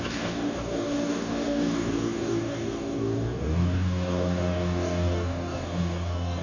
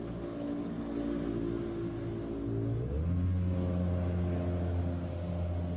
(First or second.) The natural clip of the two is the second